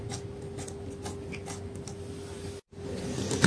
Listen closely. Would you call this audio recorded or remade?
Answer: recorded